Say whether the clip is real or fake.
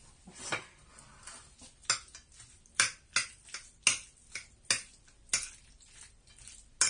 real